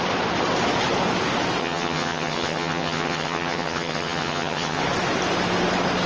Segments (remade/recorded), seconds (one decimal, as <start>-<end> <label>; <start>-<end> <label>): 0.0-1.6 recorded; 1.6-4.8 remade; 4.8-6.1 recorded